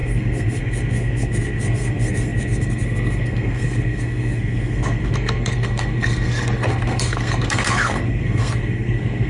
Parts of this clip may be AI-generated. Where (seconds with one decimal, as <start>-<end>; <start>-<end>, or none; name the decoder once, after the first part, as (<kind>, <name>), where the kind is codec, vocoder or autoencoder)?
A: 0.0-9.3 (codec, SNAC)